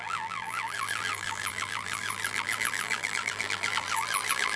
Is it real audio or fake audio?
fake